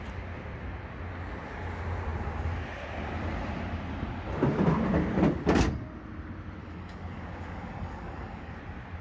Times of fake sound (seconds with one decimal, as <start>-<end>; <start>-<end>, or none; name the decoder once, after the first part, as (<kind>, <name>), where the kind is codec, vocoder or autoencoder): 6.6-8.5 (codec, DAC)